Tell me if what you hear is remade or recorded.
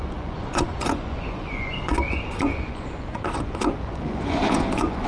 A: remade